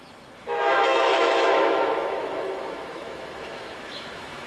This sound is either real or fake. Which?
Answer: fake